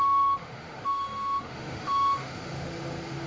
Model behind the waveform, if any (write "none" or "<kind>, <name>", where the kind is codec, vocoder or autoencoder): autoencoder, DAC-VAE